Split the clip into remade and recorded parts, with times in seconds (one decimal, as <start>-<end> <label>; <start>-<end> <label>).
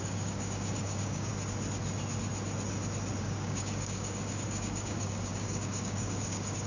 0.0-1.3 remade; 1.3-3.2 recorded; 3.2-6.7 remade